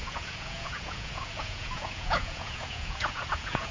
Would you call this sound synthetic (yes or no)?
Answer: yes